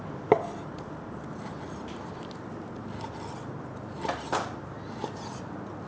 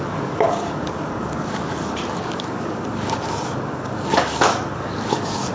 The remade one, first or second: second